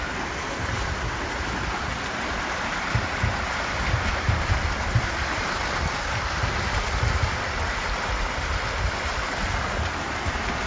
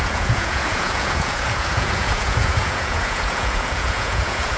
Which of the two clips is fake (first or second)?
second